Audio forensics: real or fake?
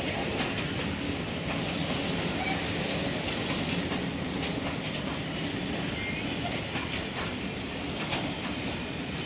real